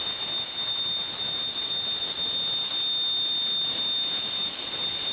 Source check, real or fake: real